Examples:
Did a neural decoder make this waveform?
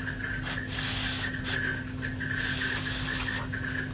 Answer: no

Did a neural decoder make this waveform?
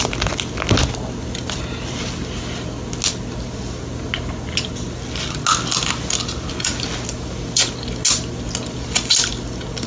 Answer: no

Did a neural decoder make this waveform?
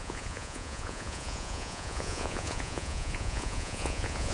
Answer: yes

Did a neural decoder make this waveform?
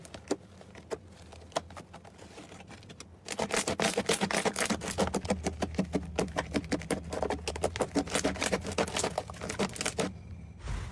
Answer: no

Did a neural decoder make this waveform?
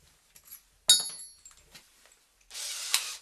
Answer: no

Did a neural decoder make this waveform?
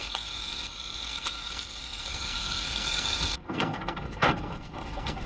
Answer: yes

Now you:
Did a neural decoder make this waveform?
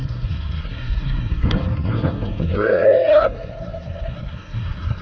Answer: yes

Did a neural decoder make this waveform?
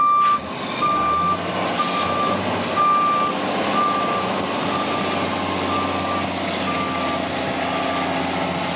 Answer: no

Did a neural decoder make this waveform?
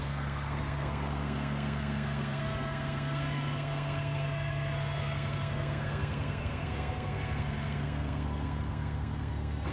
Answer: yes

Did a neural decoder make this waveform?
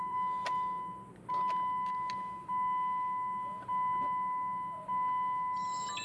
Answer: no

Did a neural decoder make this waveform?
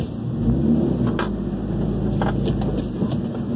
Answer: no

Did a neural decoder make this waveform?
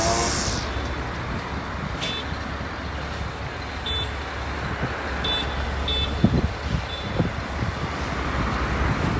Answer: no